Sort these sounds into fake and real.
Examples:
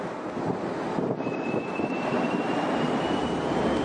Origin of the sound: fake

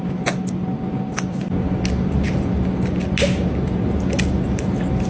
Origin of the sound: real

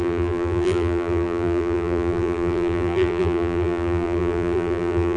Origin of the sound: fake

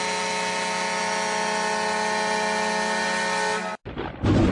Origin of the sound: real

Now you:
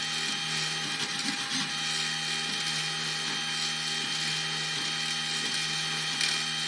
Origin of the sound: real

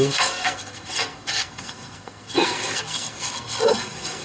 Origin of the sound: fake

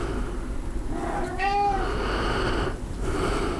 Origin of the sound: real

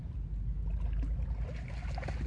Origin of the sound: real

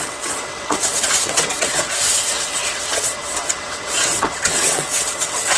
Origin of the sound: fake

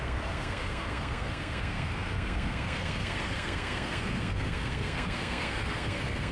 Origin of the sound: fake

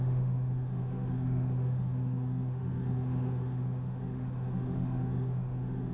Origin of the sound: fake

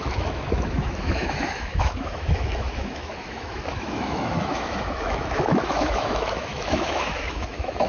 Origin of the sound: fake